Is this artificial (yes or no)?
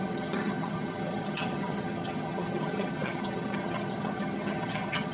yes